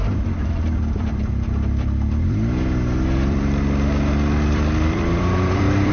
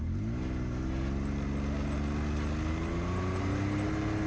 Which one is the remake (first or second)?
first